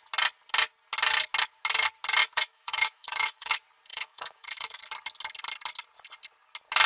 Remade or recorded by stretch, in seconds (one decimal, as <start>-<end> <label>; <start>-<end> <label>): 0.0-2.2 recorded; 2.2-3.5 remade; 3.5-3.9 recorded; 3.9-4.9 remade; 4.9-6.9 recorded